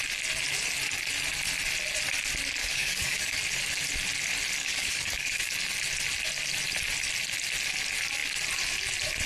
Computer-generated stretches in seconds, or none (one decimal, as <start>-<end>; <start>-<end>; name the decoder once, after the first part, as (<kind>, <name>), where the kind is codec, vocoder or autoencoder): 2.6-3.4 (codec, DAC); 4.6-5.5